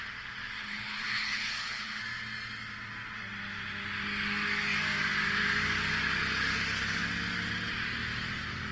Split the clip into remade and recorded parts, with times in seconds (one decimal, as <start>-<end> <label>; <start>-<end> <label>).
0.0-0.6 recorded; 0.6-2.0 remade; 2.0-8.7 recorded